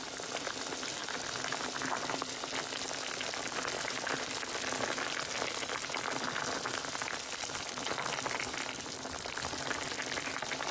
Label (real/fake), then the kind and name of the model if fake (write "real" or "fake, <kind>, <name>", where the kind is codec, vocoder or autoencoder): real